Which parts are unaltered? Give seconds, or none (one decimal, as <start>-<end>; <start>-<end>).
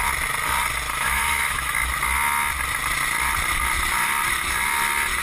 0.0-0.9; 1.9-5.2